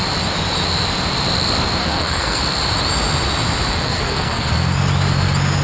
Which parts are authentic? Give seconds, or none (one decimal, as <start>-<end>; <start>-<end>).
0.0-1.8; 2.4-3.7; 4.5-5.6